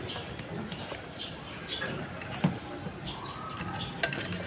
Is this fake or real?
real